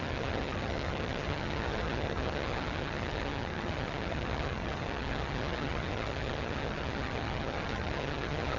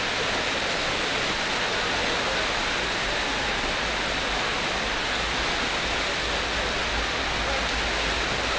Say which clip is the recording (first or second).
second